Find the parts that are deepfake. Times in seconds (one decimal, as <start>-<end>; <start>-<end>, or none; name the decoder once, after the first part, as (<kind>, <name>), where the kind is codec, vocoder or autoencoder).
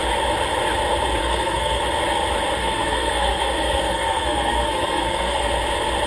1.2-1.8 (codec, SNAC); 2.6-5.5